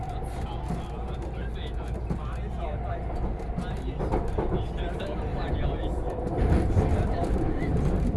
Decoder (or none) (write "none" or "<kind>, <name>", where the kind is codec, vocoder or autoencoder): none